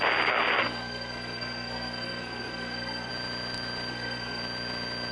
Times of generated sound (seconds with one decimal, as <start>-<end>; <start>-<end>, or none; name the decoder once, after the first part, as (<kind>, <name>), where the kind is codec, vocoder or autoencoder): 0.6-3.1 (codec, SNAC); 3.9-4.4

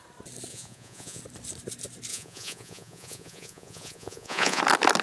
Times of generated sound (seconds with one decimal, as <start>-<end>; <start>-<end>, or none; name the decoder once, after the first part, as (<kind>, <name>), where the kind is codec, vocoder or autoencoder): 0.5-1.2 (vocoder, Vocos); 2.1-4.6

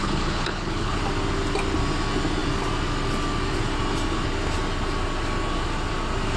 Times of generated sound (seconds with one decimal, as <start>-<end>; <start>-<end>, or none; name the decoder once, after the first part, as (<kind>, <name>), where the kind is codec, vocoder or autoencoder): 0.0-1.0 (codec, HILCodec)

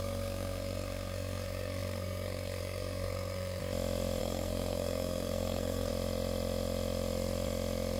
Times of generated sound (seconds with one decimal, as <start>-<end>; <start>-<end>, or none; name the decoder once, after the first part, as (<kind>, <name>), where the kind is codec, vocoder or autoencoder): 0.0-3.6 (codec, SNAC); 4.2-5.9